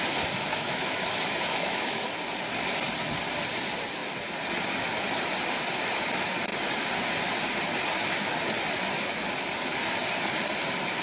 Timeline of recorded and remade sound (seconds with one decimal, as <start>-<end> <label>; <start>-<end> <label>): 0.0-0.5 recorded; 0.5-2.0 remade; 2.0-11.0 recorded